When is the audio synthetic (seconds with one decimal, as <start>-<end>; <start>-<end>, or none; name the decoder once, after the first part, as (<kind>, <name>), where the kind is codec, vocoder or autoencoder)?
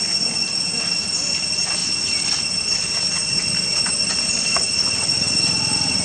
none